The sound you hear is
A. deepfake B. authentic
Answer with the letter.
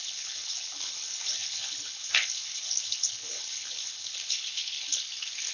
A